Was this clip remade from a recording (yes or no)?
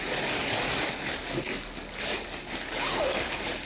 yes